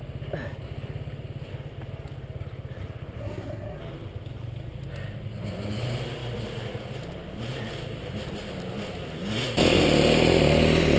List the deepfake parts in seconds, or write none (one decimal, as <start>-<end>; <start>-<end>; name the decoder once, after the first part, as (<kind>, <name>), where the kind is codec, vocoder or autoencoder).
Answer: 3.2-3.8 (codec, SNAC)